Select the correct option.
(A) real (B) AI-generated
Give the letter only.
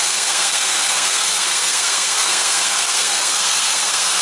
B